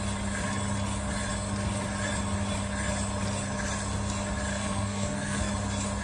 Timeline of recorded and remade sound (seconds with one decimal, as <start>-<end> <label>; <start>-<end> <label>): 0.0-4.5 recorded; 4.5-5.5 remade; 5.5-6.0 recorded